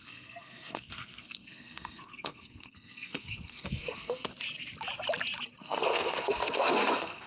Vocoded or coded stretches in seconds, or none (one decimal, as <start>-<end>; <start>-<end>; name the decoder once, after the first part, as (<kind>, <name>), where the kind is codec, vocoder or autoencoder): 0.0-4.3 (codec, SNAC); 5.6-7.3